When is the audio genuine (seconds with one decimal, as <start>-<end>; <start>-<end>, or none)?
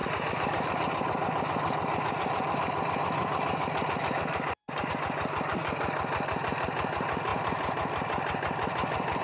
0.0-9.2